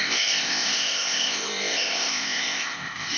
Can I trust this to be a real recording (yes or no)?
no